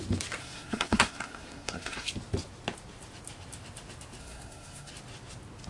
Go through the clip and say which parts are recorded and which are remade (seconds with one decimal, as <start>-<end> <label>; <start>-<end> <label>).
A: 0.0-0.4 recorded; 0.4-2.1 remade; 2.1-4.2 recorded; 4.2-4.9 remade; 4.9-5.7 recorded